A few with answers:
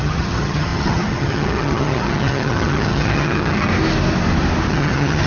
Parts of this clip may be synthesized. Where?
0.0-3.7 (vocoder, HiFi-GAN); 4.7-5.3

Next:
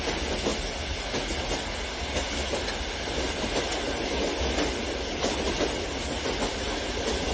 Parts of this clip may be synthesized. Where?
none

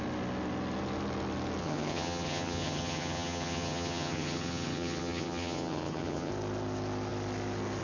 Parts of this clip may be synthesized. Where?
1.6-6.3 (vocoder, HiFi-GAN)

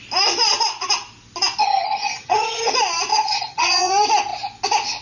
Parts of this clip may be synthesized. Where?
1.6-2.7 (vocoder, HiFi-GAN); 3.1-3.9

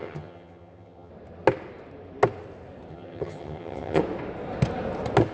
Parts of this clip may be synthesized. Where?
0.0-1.1 (vocoder, HiFi-GAN); 2.9-4.0

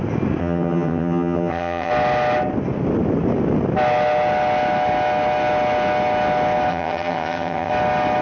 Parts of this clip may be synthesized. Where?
0.4-1.9 (vocoder, HiFi-GAN); 6.7-7.7